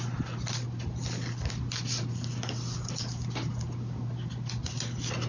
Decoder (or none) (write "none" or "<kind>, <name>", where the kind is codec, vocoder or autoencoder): none